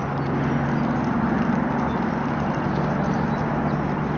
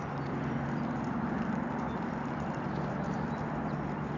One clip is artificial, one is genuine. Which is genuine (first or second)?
first